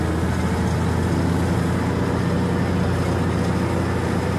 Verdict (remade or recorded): recorded